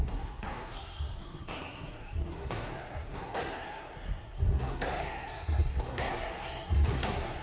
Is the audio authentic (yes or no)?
no